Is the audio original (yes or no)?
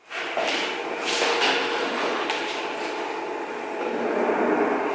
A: yes